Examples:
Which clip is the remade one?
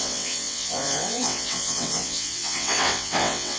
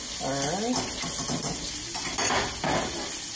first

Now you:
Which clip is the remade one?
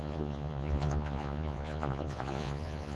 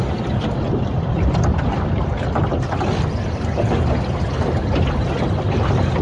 first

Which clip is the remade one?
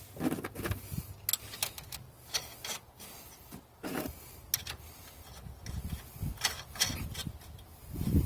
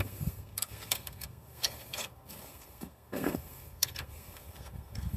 second